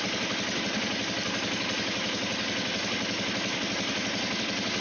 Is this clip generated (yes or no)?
no